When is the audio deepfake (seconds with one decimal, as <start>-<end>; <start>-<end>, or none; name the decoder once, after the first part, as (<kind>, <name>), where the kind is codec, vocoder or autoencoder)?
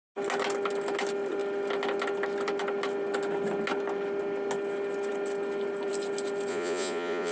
6.5-7.3 (vocoder, Vocos)